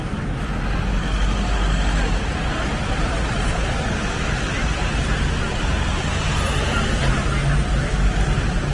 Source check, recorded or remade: recorded